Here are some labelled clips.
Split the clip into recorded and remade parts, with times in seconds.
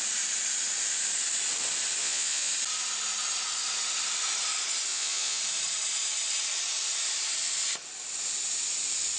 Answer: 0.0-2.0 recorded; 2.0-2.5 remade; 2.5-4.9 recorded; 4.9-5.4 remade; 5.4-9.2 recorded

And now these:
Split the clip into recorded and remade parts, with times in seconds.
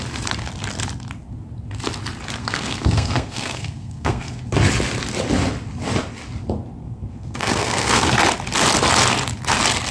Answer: 0.0-2.4 recorded; 2.4-4.4 remade; 4.4-6.8 recorded; 6.8-8.1 remade; 8.1-9.9 recorded